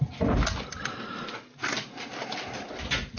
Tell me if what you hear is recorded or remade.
recorded